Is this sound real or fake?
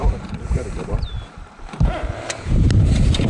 fake